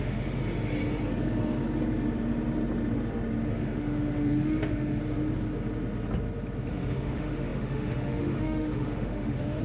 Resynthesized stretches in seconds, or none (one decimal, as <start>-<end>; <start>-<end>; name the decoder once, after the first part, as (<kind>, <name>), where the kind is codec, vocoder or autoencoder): 0.0-0.4 (autoencoder, DAC-VAE); 3.5-5.0; 6.7-9.6